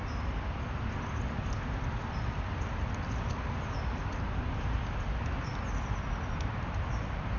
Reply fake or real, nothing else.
real